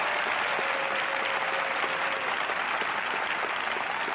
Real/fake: real